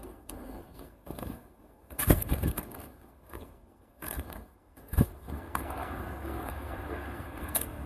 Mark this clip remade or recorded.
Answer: remade